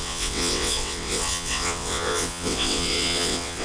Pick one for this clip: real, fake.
fake